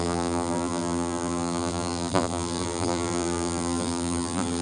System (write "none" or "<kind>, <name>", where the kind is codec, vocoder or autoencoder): vocoder, BigVGAN v2